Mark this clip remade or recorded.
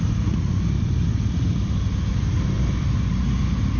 recorded